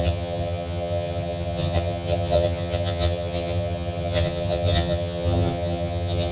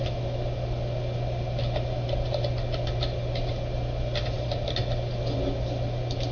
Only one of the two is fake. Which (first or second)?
first